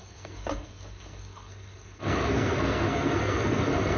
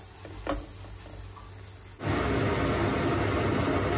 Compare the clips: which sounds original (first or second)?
second